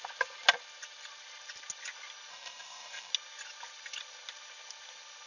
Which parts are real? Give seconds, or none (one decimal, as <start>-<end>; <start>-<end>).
0.0-2.3; 3.1-5.3

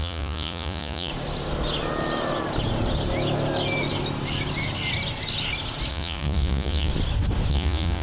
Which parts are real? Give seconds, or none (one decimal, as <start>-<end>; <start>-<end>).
1.1-5.9; 6.9-7.5